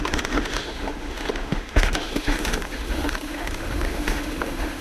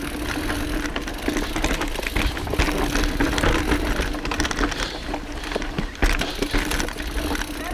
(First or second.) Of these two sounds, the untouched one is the second